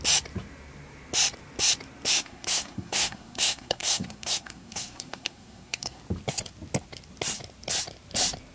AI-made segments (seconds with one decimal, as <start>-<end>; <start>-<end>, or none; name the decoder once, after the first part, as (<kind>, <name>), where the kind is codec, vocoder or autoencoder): 2.1-6.0 (codec, SNAC)